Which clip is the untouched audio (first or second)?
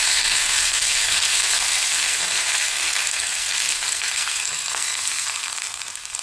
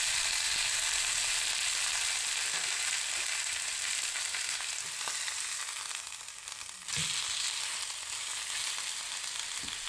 second